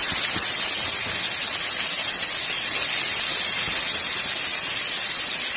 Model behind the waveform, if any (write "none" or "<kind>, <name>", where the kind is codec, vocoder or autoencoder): none